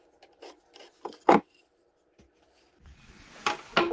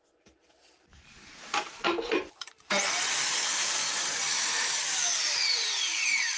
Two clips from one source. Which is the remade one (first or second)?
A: second